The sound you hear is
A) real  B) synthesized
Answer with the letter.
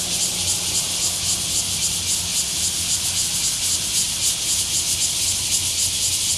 A